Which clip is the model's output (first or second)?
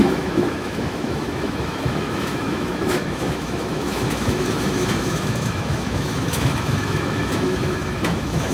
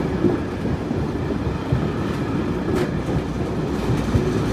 first